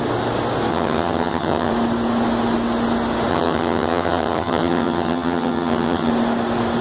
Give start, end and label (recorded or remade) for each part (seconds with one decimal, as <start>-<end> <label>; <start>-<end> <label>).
0.0-0.7 recorded; 0.7-1.7 remade; 1.7-3.3 recorded; 3.3-6.1 remade; 6.1-6.8 recorded